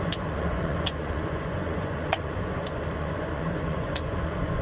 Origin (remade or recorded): remade